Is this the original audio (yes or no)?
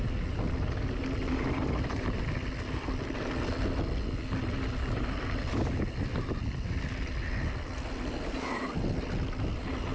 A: yes